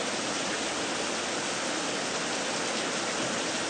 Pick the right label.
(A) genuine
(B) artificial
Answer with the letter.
A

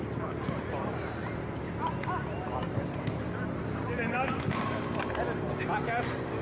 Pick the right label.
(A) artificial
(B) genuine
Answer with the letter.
B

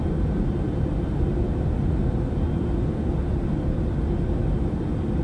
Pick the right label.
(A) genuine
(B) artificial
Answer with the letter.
A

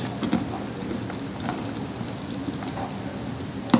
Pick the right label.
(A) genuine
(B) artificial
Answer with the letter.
A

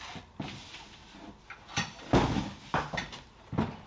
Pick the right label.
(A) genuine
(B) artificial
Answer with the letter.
A